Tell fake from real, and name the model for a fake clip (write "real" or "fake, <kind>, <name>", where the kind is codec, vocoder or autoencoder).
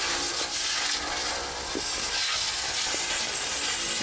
real